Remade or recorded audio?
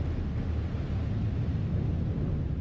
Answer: recorded